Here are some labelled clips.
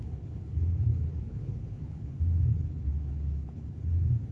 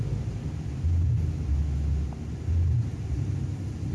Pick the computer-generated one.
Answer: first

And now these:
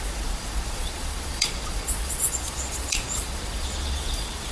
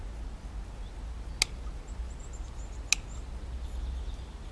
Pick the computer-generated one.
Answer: first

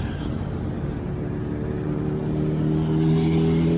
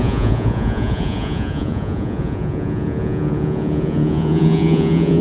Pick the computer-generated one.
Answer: second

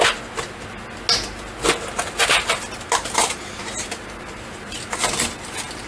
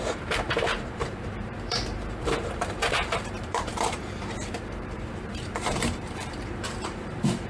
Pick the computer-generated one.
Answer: second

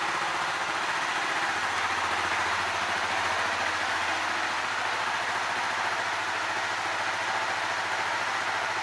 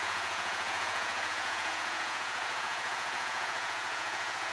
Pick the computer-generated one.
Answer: second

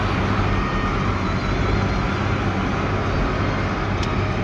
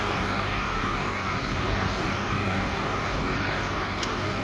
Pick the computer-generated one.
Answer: second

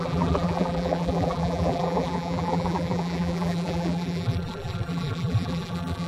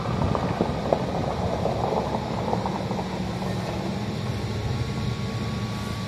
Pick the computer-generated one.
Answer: first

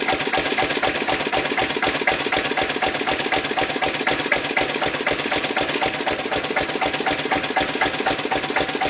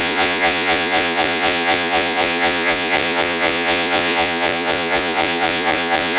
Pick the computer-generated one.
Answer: second